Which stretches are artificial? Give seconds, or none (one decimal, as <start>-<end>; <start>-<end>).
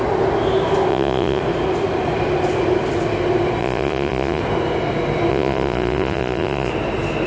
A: 0.9-1.4; 3.6-4.4; 5.3-6.7